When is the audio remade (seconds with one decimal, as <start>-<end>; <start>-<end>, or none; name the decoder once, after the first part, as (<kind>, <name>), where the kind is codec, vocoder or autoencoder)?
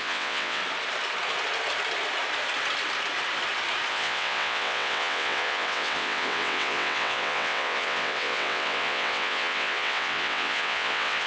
0.0-0.6 (vocoder, WaveNeXt); 3.9-11.3